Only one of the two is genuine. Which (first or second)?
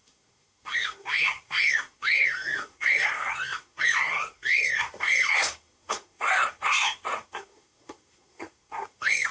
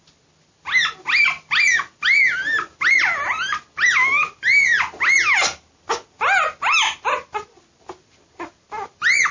second